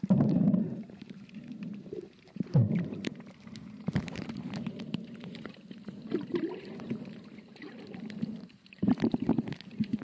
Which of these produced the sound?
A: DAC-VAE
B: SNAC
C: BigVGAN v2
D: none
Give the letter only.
C